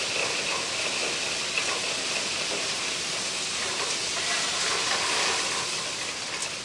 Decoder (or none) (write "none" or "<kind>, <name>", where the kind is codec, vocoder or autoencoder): none